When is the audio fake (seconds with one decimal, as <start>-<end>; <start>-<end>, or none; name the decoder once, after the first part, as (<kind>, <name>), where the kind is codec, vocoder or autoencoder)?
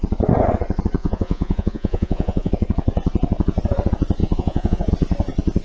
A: 1.0-2.5 (vocoder, Vocos); 4.2-4.9